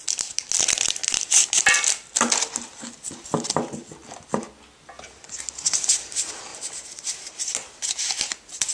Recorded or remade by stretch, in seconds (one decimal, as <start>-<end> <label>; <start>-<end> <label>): 0.0-6.5 recorded; 6.5-7.4 remade; 7.4-8.7 recorded